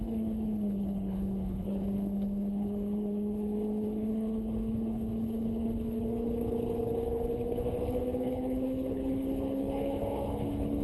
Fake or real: fake